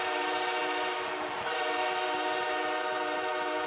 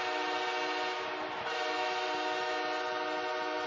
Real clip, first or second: second